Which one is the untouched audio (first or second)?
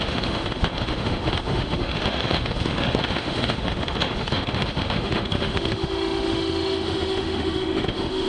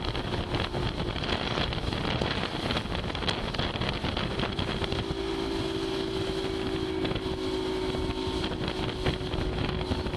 second